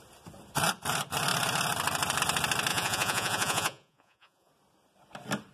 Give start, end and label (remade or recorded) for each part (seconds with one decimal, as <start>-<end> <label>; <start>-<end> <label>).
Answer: 0.0-2.7 recorded; 2.7-4.5 remade; 4.5-5.5 recorded